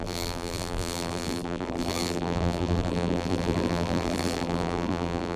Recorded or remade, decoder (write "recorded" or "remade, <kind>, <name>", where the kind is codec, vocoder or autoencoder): remade, vocoder, BigVGAN v2